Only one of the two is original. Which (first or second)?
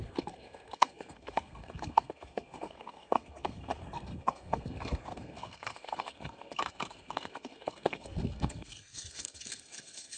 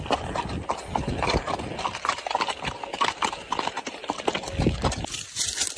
second